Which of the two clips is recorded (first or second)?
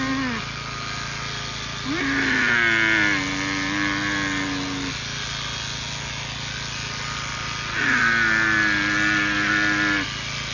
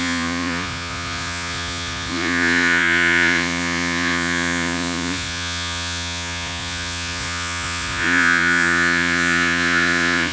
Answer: first